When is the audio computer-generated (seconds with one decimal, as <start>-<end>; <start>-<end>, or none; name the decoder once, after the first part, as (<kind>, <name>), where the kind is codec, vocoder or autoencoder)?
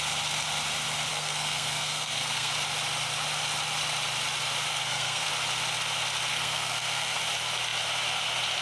1.1-2.5 (codec, SNAC); 4.7-5.3; 6.3-7.2